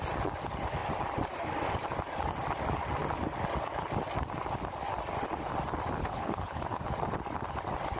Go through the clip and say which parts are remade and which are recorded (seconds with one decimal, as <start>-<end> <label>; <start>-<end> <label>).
0.0-6.0 recorded; 6.0-6.8 remade; 6.8-8.0 recorded